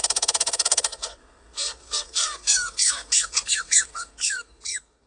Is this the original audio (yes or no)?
no